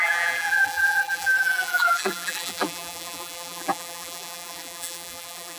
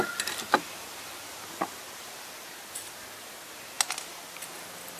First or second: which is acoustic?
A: second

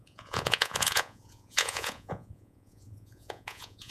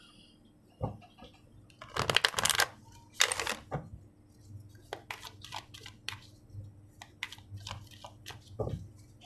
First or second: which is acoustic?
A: second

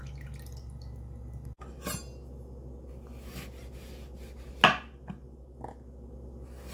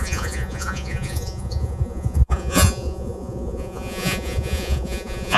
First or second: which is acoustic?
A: first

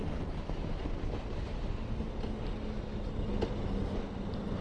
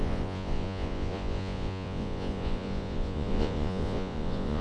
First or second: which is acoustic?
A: first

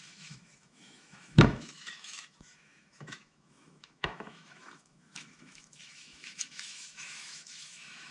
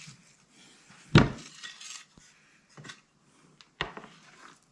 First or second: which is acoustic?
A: second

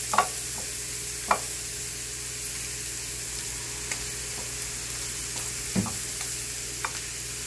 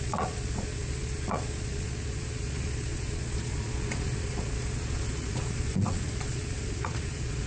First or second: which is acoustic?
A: first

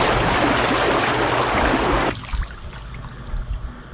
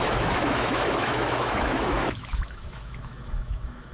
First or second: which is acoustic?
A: first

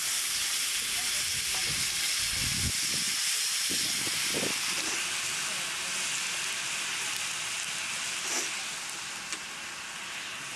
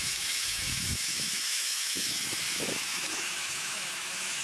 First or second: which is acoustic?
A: first